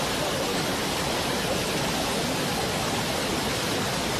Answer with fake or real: real